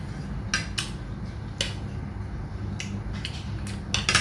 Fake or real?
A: real